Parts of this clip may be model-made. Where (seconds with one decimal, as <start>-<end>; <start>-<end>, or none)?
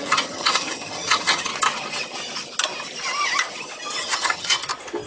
0.0-1.5; 4.0-4.6